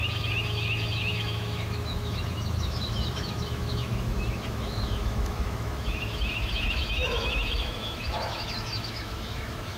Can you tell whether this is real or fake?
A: fake